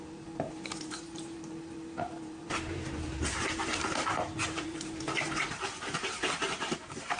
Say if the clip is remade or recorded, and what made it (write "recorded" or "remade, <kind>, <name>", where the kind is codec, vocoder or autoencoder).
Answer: remade, vocoder, BigVGAN v2